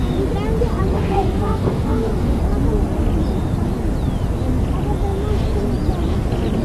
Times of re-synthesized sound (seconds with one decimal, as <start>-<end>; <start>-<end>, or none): 0.9-2.4